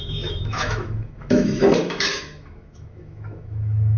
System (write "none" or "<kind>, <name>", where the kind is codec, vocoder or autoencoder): autoencoder, DAC-VAE